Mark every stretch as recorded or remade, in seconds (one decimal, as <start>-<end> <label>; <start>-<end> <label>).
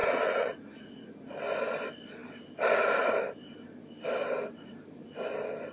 0.0-1.3 remade; 1.3-5.7 recorded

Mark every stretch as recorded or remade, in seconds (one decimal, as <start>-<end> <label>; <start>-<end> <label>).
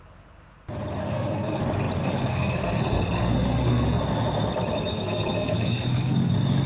0.0-1.0 recorded; 1.0-1.6 remade; 1.6-2.0 recorded; 2.0-4.0 remade; 4.0-4.9 recorded; 4.9-6.3 remade; 6.3-6.7 recorded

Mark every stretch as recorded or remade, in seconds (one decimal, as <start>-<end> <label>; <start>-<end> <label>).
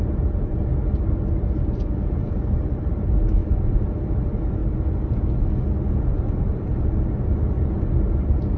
0.0-0.7 remade; 0.7-1.3 recorded; 1.3-4.6 remade; 4.6-5.9 recorded; 5.9-6.7 remade; 6.7-8.1 recorded; 8.1-8.6 remade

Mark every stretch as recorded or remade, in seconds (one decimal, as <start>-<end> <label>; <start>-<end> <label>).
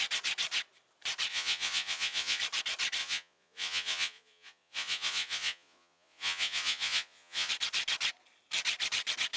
0.0-1.3 recorded; 1.3-2.4 remade; 2.4-3.0 recorded; 3.0-7.5 remade; 7.5-9.4 recorded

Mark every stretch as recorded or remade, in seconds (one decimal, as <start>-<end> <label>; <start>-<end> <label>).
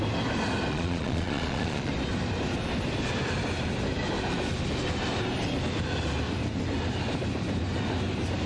0.0-0.7 recorded; 0.7-1.9 remade; 1.9-8.5 recorded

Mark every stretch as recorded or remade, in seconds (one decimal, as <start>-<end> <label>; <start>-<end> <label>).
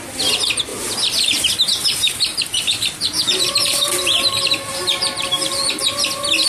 0.0-0.7 recorded; 0.7-1.5 remade; 1.5-2.3 recorded; 2.3-6.1 remade; 6.1-6.5 recorded